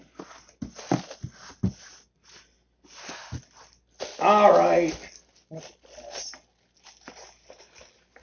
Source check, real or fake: real